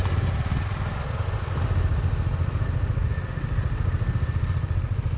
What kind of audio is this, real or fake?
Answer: real